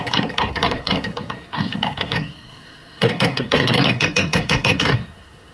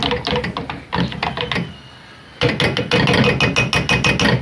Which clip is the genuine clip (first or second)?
second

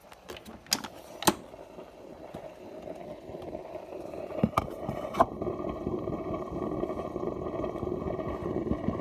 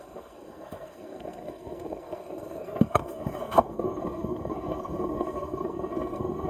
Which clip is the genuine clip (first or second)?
first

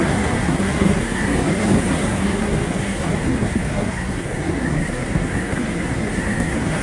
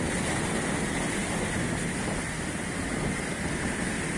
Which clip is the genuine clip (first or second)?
second